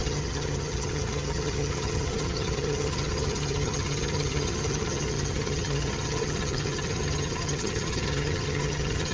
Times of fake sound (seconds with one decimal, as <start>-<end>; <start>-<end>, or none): 0.0-9.1